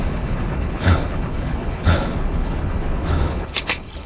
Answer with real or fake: fake